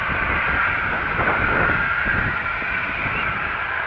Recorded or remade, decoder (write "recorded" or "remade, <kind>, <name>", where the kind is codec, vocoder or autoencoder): recorded